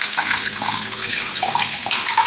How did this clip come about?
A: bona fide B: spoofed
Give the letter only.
B